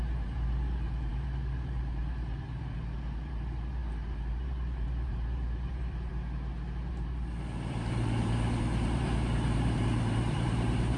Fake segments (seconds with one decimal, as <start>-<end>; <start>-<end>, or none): 0.0-6.1; 6.9-11.0